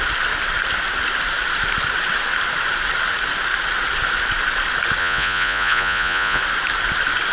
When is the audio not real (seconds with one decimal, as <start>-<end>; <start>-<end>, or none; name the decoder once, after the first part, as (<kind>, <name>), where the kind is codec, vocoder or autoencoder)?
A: 5.0-6.4 (vocoder, Vocos)